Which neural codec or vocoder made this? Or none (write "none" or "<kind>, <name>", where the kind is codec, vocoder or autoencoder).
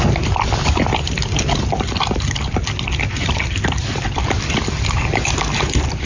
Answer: none